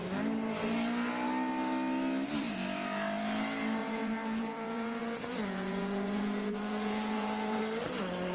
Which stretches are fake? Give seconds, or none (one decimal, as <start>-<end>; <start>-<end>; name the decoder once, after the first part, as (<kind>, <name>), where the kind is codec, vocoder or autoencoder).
3.8-7.6 (vocoder, Vocos)